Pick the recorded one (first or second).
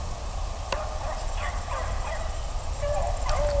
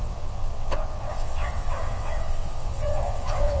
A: first